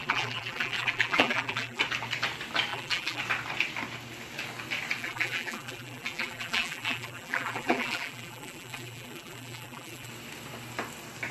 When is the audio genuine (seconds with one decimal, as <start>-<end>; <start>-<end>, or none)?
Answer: 1.8-2.7; 3.2-5.0; 10.1-11.3